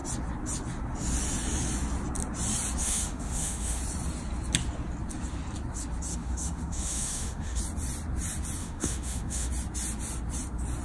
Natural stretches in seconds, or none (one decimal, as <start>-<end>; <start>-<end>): 0.0-2.8; 3.8-6.1; 7.6-8.6; 9.5-10.8